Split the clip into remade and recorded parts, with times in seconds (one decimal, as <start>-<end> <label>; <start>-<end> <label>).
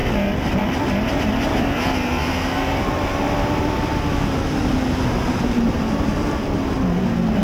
0.0-2.2 recorded; 2.2-3.6 remade; 3.6-5.2 recorded; 5.2-6.5 remade; 6.5-7.4 recorded